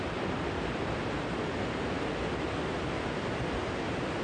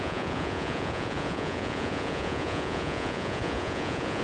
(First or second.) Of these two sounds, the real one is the first